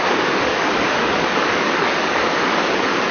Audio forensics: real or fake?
fake